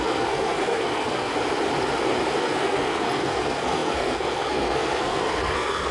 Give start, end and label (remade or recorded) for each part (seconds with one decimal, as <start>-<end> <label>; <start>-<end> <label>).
0.0-1.3 remade; 1.3-2.4 recorded; 2.4-5.9 remade